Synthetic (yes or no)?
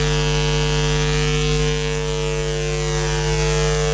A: no